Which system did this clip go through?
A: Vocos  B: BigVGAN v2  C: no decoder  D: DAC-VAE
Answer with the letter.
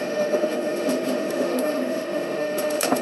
D